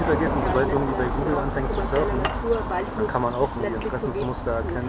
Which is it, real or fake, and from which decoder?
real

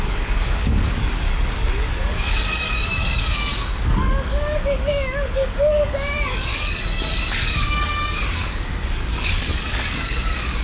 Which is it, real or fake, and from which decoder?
fake, codec, DAC